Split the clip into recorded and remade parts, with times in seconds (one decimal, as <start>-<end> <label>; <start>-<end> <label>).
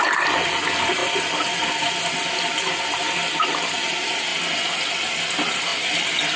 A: 0.0-1.0 remade; 1.0-2.4 recorded; 2.4-4.3 remade; 4.3-5.1 recorded; 5.1-6.4 remade